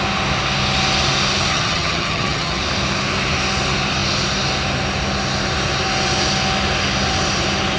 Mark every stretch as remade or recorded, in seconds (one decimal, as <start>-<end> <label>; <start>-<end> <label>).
0.0-1.5 recorded; 1.5-2.6 remade; 2.6-7.8 recorded